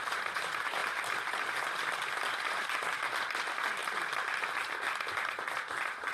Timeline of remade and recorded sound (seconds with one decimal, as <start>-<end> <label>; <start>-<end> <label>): 0.0-6.1 recorded